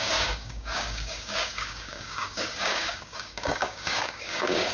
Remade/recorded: remade